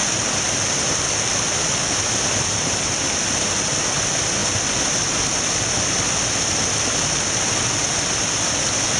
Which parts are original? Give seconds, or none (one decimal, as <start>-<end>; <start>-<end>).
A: 0.0-9.0

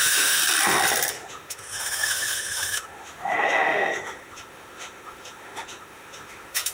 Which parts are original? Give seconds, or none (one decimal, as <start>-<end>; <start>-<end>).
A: 0.4-1.1

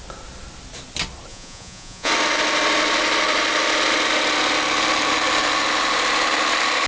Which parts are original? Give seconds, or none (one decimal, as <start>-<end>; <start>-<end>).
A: 0.0-1.3; 2.1-6.9

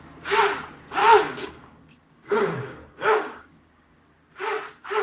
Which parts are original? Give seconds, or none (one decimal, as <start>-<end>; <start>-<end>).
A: 0.0-1.0; 4.0-5.0

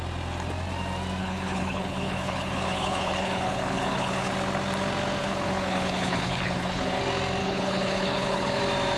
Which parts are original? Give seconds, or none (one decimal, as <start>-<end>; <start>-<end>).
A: 0.0-1.2; 4.3-5.2; 7.0-7.4; 8.6-9.0

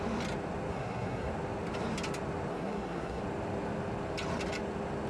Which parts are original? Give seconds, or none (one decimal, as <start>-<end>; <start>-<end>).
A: 0.0-0.7; 1.3-2.5; 3.2-5.1

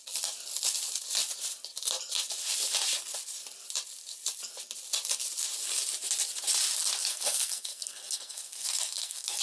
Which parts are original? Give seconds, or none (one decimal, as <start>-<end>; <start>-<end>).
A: 0.0-7.1

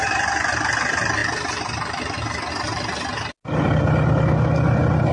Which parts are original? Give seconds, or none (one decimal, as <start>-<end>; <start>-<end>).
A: 0.0-5.1